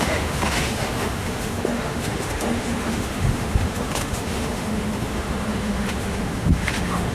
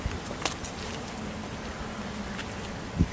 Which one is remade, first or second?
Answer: first